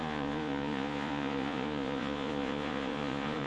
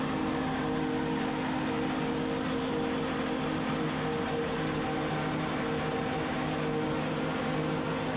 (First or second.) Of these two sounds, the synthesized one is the first